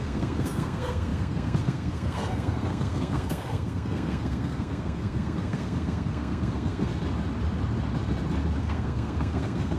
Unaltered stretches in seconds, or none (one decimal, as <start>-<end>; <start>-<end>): 6.9-8.6